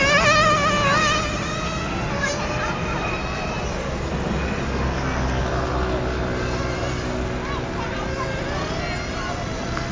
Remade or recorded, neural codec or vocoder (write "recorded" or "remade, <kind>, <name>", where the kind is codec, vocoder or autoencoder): recorded